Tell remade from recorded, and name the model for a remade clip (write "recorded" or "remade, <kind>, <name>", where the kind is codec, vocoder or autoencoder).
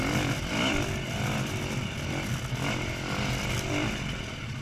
recorded